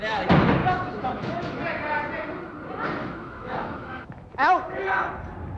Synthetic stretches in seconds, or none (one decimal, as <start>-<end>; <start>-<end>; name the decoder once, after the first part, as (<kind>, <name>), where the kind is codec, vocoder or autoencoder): 0.6-1.6 (autoencoder, DAC-VAE); 3.0-4.7